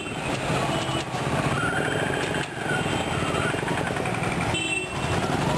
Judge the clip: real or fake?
real